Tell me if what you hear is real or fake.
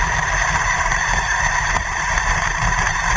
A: fake